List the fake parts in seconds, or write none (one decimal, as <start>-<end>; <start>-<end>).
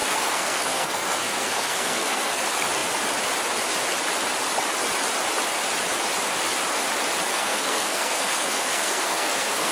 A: 0.0-2.4; 7.3-9.7